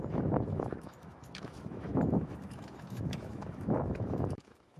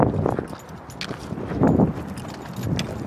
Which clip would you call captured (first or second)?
second